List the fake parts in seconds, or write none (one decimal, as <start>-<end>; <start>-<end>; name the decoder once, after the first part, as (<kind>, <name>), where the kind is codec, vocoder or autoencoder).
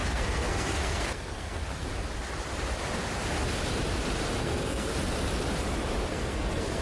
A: 0.0-1.9 (codec, SNAC); 4.4-4.9; 6.1-6.8